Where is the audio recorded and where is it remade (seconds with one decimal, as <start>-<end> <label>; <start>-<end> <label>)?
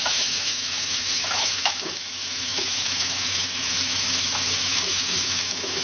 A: 0.0-5.8 remade